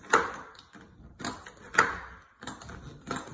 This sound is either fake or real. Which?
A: real